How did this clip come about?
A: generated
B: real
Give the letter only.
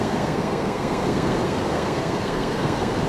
A